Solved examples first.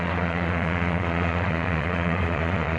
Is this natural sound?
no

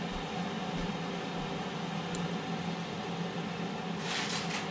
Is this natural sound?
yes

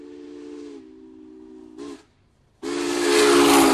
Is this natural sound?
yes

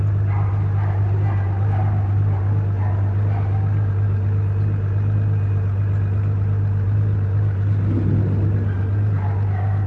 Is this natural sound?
yes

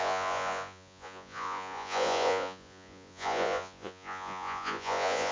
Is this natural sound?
no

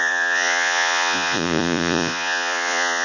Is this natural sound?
no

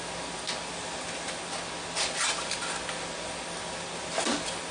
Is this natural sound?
yes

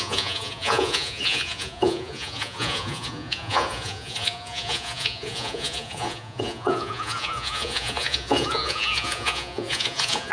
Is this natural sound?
no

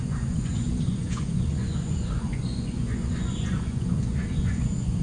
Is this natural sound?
no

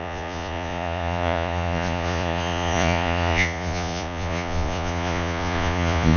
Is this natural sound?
no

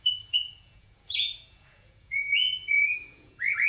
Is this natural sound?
no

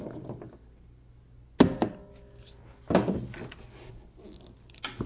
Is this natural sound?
yes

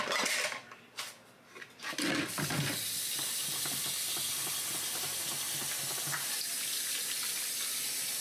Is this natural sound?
yes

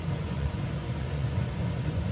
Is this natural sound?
no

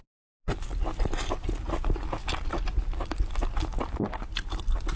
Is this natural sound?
yes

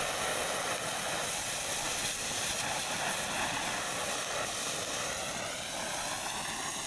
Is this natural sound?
yes